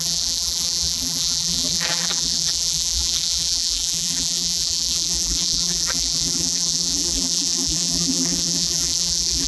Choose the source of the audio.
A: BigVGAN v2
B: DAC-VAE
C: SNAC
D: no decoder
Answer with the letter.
A